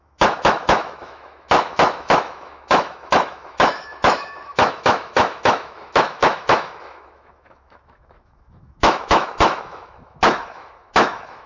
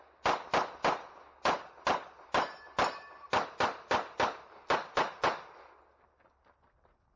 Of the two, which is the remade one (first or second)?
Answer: first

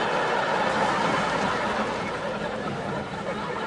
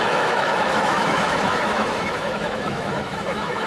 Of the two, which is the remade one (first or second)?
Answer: second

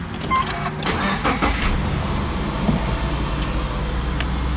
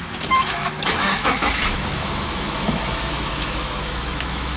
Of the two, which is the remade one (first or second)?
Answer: second